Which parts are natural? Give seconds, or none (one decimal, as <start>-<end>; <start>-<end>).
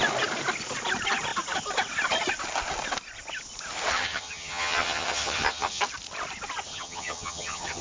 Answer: 0.0-3.9; 5.8-6.7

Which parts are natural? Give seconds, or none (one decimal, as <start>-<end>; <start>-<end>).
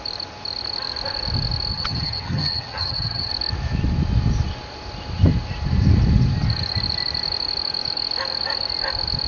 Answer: 0.0-1.7; 3.3-9.3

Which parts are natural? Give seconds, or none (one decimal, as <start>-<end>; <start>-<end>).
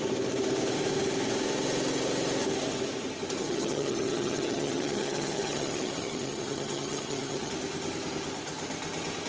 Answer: 0.0-3.4; 7.5-9.3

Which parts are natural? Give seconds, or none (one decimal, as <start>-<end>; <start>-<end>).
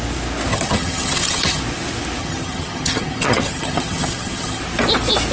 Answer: 0.0-0.5; 1.6-2.2; 4.6-5.3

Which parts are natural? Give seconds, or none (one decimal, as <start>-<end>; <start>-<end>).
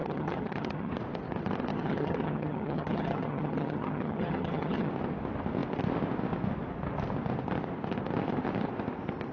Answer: 0.9-1.7; 4.9-9.3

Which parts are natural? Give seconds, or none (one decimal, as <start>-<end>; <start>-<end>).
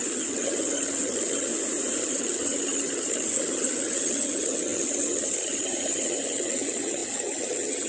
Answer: 1.5-2.0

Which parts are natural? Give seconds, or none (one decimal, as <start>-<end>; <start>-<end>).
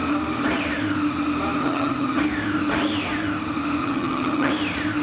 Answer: 0.0-1.6; 2.2-3.8; 4.5-5.0